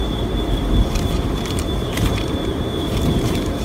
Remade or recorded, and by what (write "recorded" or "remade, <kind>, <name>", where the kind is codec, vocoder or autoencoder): remade, vocoder, BigVGAN v2